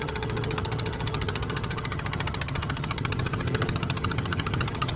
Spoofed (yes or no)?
yes